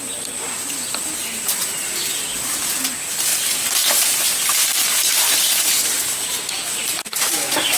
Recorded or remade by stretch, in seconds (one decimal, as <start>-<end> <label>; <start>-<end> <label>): 0.0-6.6 recorded; 6.6-7.3 remade; 7.3-7.8 recorded